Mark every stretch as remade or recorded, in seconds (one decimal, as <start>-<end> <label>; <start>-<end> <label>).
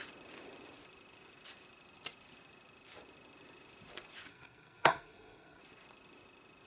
0.0-4.3 recorded; 4.3-5.6 remade; 5.6-6.7 recorded